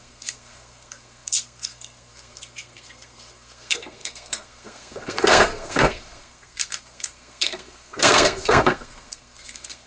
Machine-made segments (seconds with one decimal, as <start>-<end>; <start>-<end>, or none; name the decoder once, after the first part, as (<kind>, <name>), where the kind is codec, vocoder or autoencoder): 0.0-9.9 (codec, SNAC)